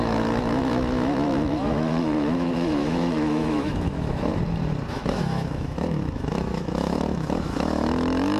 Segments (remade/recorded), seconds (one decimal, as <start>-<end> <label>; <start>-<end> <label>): 0.0-4.3 remade; 4.3-4.9 recorded; 4.9-8.4 remade